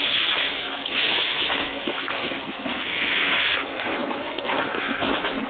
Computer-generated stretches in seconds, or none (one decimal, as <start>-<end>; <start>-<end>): 0.0-5.5